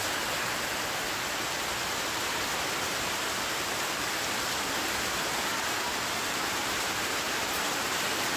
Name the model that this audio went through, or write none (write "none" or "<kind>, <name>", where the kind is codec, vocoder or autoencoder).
vocoder, BigVGAN v2